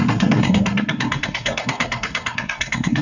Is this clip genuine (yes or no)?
no